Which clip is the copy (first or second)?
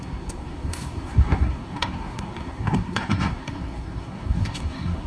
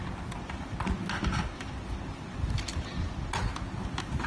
first